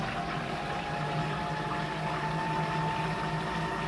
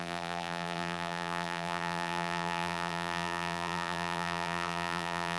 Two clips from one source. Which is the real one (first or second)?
first